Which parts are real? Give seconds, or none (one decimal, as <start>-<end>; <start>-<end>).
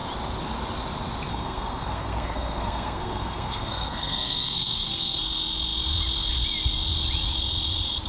0.0-1.3; 5.2-8.1